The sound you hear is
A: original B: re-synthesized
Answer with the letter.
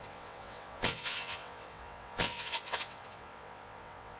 B